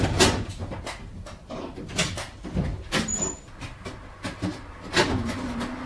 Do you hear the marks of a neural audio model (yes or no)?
no